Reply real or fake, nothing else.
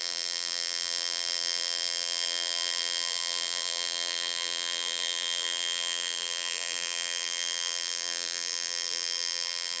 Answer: fake